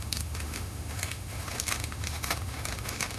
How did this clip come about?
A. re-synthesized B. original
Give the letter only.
A